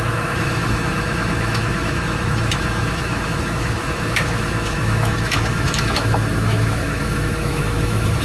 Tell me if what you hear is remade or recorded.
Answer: remade